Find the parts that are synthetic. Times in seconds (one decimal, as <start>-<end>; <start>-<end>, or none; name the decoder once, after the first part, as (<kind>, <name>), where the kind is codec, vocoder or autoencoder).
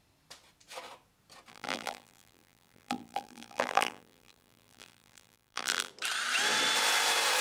1.5-5.9 (vocoder, BigVGAN v2)